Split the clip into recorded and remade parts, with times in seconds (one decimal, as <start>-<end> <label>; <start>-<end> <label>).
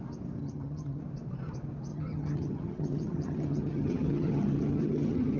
0.0-0.4 recorded; 0.4-1.0 remade; 1.0-1.9 recorded; 1.9-5.4 remade